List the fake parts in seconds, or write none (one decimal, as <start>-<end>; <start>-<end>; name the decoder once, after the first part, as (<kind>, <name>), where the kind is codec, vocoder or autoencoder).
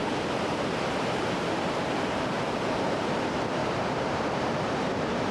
0.0-3.2 (vocoder, BigVGAN v2); 3.6-4.2